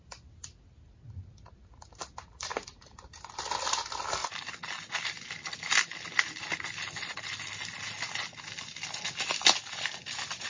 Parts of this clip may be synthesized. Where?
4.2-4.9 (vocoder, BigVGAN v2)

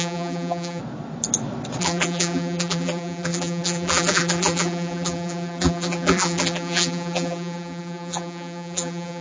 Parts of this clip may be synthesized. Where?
0.0-0.8 (vocoder, BigVGAN v2); 1.8-9.2

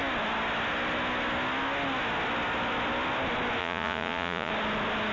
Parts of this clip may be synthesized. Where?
3.6-4.5 (vocoder, Vocos)

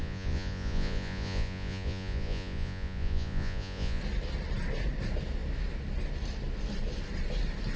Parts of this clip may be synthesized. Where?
0.0-4.0 (vocoder, Vocos)

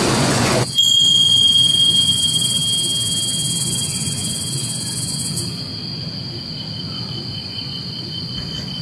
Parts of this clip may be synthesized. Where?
0.0-2.6 (vocoder, Vocos); 3.6-5.7; 6.9-8.8

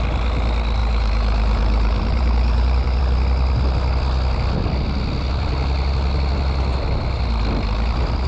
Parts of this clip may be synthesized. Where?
0.8-3.0 (vocoder, BigVGAN v2)